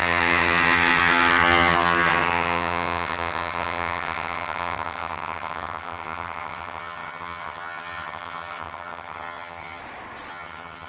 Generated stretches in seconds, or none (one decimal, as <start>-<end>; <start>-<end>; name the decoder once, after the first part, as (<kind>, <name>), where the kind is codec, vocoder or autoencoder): 0.0-9.8 (vocoder, HiFi-GAN); 10.3-10.9